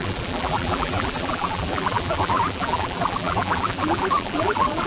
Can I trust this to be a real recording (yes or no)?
no